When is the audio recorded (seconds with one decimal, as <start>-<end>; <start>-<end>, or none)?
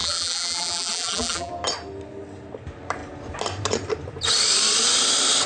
1.5-5.5